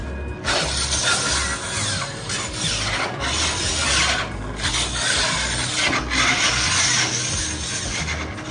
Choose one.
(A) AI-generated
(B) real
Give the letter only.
B